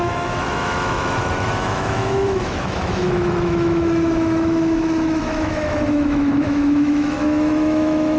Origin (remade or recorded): remade